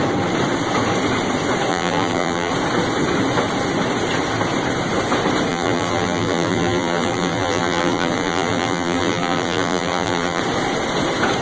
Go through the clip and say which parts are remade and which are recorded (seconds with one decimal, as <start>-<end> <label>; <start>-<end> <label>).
0.0-1.7 recorded; 1.7-2.5 remade; 2.5-5.5 recorded; 5.5-10.4 remade; 10.4-11.4 recorded